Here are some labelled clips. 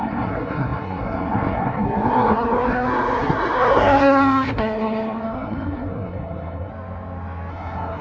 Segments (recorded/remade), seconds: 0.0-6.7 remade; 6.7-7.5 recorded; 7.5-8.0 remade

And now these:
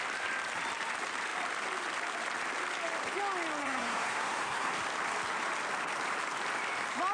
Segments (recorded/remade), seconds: 0.0-3.6 recorded; 3.6-4.7 remade; 4.7-7.1 recorded

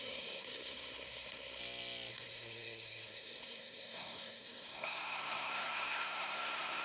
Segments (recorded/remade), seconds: 0.0-1.6 remade; 1.6-2.1 recorded; 2.1-6.8 remade

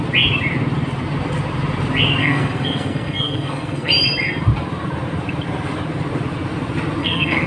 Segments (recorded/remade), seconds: 0.0-2.2 recorded; 2.2-3.9 remade; 3.9-7.0 recorded; 7.0-7.5 remade

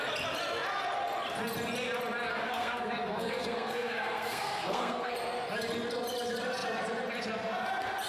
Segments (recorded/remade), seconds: 0.0-2.3 recorded; 2.3-5.1 remade; 5.1-8.1 recorded

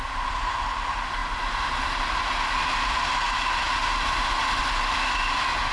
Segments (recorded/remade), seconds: 0.0-5.7 recorded

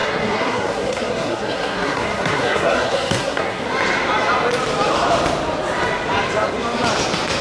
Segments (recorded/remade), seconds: 0.0-3.6 remade; 3.6-7.4 recorded

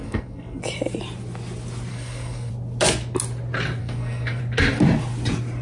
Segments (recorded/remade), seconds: 0.0-0.6 remade; 0.6-1.9 recorded; 1.9-2.5 remade; 2.5-3.8 recorded; 3.8-4.4 remade; 4.4-5.6 recorded